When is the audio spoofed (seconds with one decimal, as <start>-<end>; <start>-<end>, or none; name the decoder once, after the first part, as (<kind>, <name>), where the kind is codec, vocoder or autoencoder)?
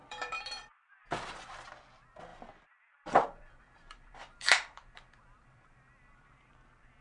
0.0-0.9 (vocoder, BigVGAN v2); 2.3-6.5